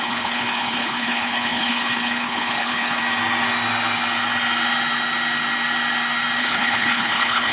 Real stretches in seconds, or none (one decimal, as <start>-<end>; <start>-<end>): 3.0-6.4